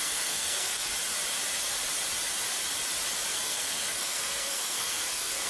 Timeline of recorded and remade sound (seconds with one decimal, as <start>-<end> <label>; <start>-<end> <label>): 0.0-0.9 remade; 0.9-3.3 recorded; 3.3-5.5 remade

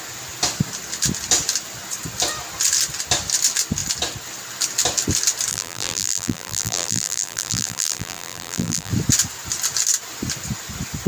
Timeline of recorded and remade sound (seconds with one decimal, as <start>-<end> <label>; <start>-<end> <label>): 0.0-5.5 recorded; 5.5-8.9 remade; 8.9-11.1 recorded

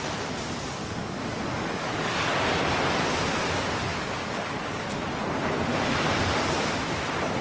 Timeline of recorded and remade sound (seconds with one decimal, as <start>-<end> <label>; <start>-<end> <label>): 0.0-0.8 recorded; 0.8-2.3 remade; 2.3-3.9 recorded; 3.9-4.8 remade; 4.8-7.4 recorded

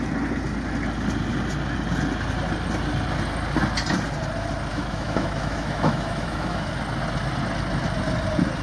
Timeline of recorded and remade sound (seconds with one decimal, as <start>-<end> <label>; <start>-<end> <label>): 0.0-4.7 recorded; 4.7-6.7 remade; 6.7-8.6 recorded

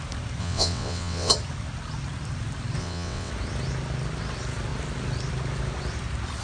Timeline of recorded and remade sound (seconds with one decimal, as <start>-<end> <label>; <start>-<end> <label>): 0.0-0.4 recorded; 0.4-1.3 remade; 1.3-2.8 recorded; 2.8-3.3 remade; 3.3-6.4 recorded

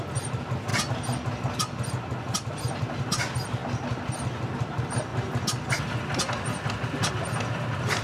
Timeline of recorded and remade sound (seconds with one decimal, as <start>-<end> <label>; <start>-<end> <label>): 0.0-8.0 recorded

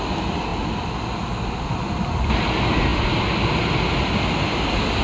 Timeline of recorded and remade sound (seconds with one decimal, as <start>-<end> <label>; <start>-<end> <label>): 0.0-5.0 recorded

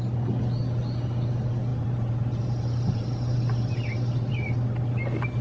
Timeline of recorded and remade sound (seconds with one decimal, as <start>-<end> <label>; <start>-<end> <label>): 0.0-1.7 recorded; 1.7-4.3 remade; 4.3-5.4 recorded